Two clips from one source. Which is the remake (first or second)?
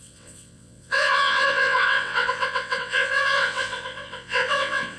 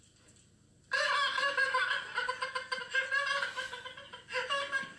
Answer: first